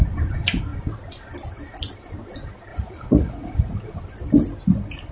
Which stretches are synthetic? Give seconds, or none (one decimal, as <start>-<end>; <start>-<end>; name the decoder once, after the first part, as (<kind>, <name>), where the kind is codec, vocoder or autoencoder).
2.7-4.0 (vocoder, Vocos)